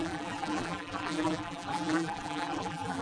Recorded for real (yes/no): no